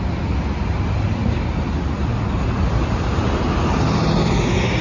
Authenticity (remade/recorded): recorded